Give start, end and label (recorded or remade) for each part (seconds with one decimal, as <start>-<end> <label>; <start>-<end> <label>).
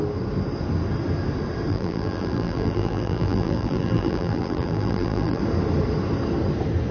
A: 0.0-1.7 recorded; 1.7-5.4 remade; 5.4-6.9 recorded